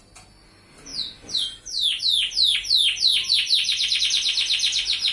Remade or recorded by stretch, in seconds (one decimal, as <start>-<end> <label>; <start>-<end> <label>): 0.0-0.9 recorded; 0.9-2.0 remade; 2.0-3.1 recorded; 3.1-4.0 remade; 4.0-5.1 recorded